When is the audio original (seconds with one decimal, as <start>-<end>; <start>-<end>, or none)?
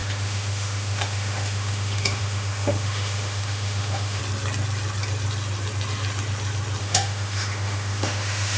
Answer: 4.2-6.8